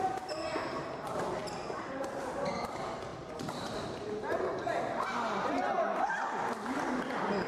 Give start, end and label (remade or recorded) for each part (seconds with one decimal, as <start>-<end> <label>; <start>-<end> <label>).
0.0-7.5 recorded